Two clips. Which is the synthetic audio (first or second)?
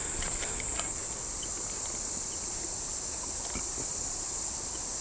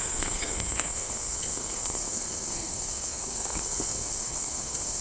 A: second